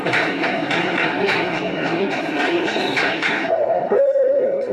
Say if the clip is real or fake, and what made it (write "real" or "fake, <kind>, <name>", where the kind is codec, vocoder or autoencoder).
fake, codec, SNAC